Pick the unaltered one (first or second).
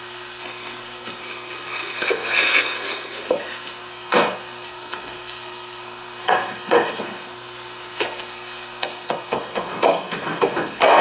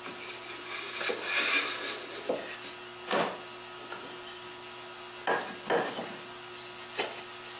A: second